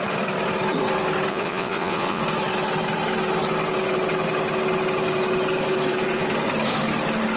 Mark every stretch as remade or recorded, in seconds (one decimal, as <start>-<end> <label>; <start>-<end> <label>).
0.0-1.3 recorded; 1.3-2.2 remade; 2.2-7.4 recorded